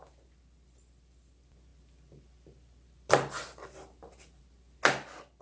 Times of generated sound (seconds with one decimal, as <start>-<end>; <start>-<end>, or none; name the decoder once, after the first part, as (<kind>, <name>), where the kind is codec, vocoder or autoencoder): none